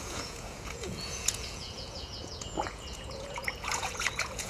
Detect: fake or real fake